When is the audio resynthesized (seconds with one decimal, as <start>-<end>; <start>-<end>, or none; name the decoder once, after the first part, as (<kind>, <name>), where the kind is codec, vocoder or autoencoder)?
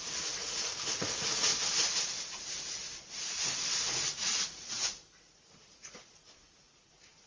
0.0-1.5 (vocoder, Vocos); 3.9-7.3